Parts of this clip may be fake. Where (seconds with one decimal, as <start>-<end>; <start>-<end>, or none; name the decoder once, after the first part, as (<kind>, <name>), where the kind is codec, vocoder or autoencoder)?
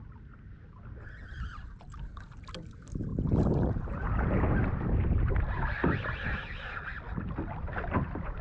none